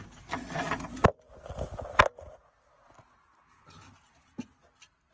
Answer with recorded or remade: recorded